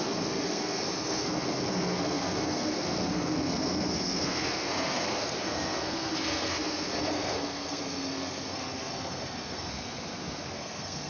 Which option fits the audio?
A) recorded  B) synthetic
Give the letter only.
B